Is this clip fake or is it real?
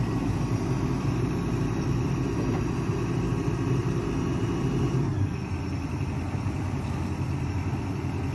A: fake